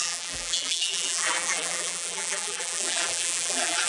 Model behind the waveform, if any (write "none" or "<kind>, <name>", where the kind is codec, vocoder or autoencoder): vocoder, BigVGAN v2